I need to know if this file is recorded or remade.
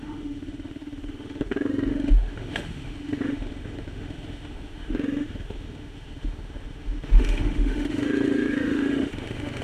remade